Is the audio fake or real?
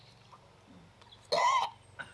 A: real